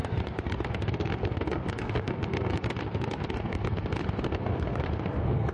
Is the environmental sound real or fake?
fake